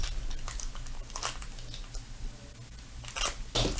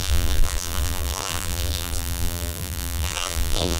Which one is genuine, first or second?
first